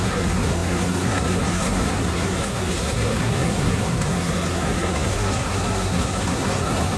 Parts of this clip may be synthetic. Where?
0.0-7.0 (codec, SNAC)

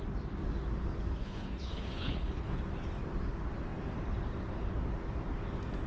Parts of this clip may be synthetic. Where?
1.2-2.6 (codec, HILCodec)